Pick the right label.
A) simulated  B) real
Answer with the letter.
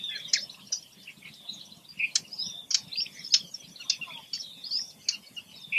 B